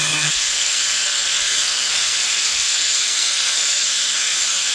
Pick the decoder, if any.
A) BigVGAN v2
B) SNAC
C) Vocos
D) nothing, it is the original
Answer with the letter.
B